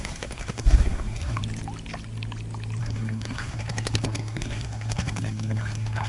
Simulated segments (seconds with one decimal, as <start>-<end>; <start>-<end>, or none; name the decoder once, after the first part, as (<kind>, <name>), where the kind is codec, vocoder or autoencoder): 0.0-1.4 (codec, SNAC); 2.8-6.1

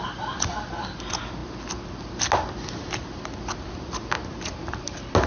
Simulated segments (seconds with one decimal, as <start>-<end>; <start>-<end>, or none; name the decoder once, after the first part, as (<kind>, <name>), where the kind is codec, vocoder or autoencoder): none

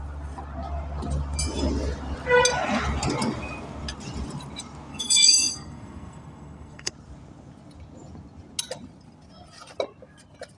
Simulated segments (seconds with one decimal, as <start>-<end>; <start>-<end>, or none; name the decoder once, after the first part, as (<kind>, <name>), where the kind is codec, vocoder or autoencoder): 4.9-6.9 (codec, SNAC)

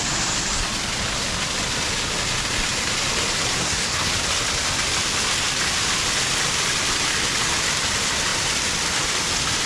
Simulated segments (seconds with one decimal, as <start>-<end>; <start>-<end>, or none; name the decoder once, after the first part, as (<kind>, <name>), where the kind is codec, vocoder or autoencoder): 3.6-4.1 (codec, SNAC)

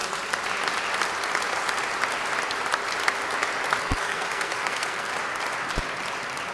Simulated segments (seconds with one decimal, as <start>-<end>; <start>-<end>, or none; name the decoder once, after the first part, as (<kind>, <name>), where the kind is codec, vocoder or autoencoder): 3.8-5.1 (codec, SNAC)